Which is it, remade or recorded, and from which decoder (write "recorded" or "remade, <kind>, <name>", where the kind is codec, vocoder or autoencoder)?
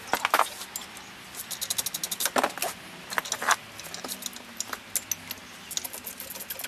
recorded